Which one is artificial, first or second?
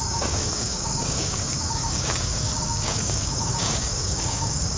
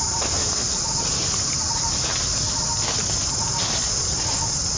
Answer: first